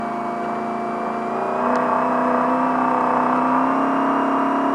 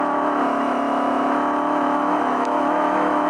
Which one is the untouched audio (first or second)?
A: first